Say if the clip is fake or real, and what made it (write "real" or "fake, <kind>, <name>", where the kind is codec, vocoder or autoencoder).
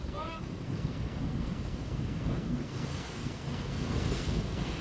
fake, codec, SNAC